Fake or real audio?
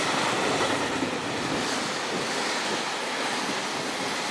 real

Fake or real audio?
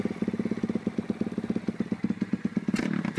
real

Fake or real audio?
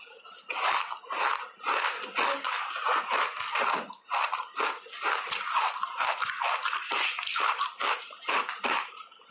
real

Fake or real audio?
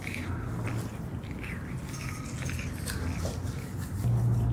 real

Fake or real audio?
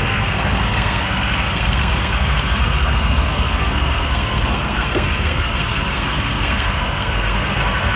fake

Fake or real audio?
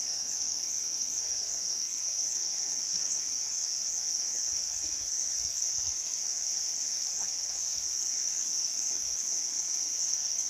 fake